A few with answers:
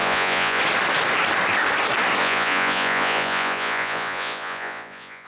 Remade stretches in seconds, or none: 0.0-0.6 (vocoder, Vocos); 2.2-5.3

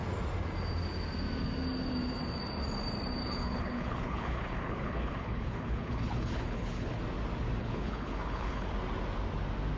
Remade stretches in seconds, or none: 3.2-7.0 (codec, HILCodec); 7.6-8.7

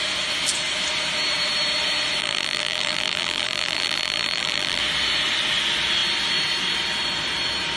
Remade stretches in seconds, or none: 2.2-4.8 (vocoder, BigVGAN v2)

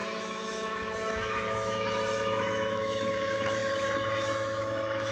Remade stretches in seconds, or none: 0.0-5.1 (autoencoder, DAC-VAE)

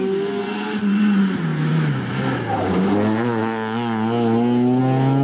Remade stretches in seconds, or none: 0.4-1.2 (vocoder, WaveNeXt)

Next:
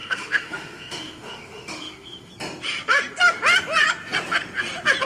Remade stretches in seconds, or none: 0.0-2.3 (autoencoder, DAC-VAE)

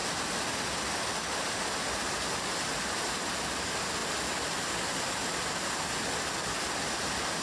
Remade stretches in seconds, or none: none

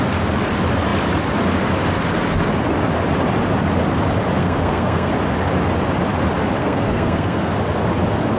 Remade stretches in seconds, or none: 4.4-5.1 (codec, SNAC); 6.6-7.5